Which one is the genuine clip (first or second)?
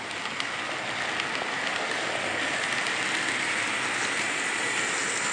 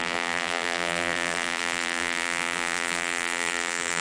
first